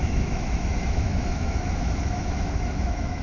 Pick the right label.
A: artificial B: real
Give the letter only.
A